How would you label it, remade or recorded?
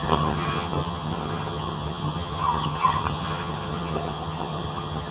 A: remade